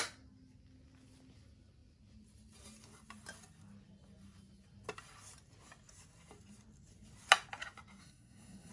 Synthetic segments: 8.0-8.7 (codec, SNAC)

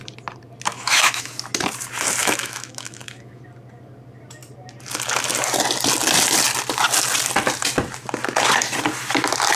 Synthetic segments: 0.7-1.3 (autoencoder, DAC-VAE); 2.2-3.4

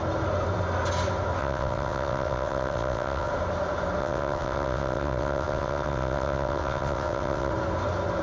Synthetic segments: 1.4-3.3 (vocoder, WaveNeXt); 4.0-7.5

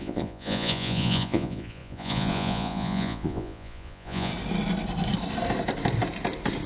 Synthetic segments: 0.0-4.3 (vocoder, Vocos)

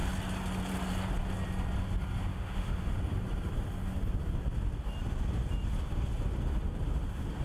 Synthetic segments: 2.3-2.9 (autoencoder, DAC-VAE)

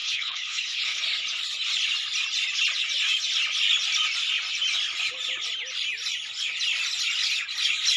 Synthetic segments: 0.0-1.0 (codec, HILCodec)

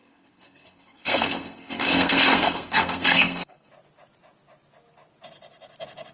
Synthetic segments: 0.0-3.7 (codec, SNAC)

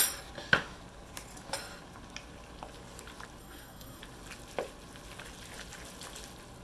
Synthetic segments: 3.4-4.0 (codec, SNAC)